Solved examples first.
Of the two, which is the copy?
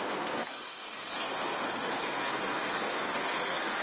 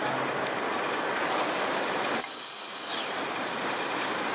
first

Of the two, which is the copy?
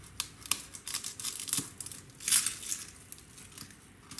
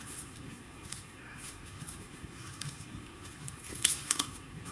second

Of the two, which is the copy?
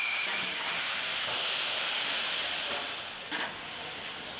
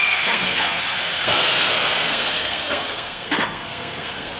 second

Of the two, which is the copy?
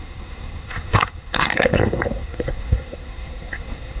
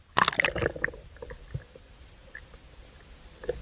first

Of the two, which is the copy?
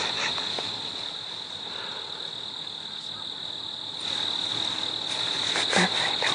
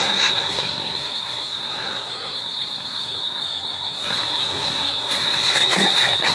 second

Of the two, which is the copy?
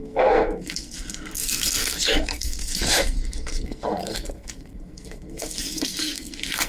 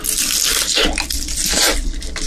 first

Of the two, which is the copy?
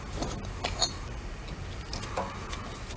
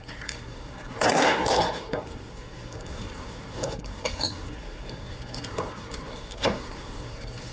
second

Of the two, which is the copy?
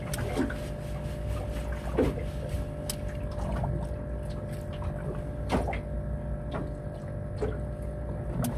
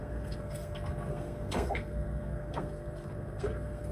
second